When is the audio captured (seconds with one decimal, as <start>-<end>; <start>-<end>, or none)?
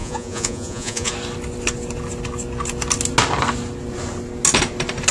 1.1-5.1